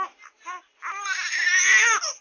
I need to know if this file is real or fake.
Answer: real